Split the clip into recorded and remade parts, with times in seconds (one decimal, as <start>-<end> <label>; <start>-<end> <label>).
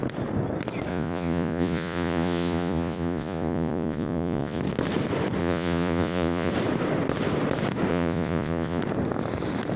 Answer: 0.0-0.9 recorded; 0.9-4.6 remade; 4.6-5.4 recorded; 5.4-6.5 remade; 6.5-7.9 recorded; 7.9-8.8 remade; 8.8-9.8 recorded